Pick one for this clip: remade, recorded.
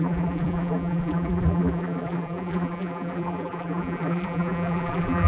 remade